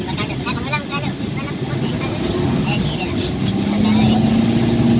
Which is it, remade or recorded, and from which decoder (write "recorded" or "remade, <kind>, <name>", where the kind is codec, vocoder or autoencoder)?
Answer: recorded